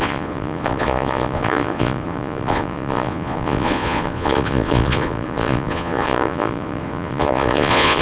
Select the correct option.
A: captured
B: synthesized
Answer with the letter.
B